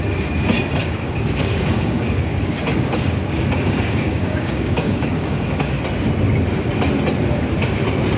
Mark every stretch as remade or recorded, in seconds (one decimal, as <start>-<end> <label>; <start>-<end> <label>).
0.0-0.8 recorded; 0.8-5.7 remade; 5.7-8.2 recorded